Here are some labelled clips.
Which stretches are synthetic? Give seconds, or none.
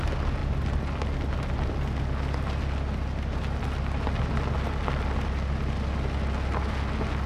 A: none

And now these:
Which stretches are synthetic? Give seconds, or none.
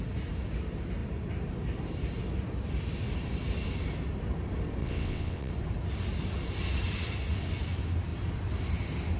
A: 4.8-5.5 (vocoder, WaveNeXt)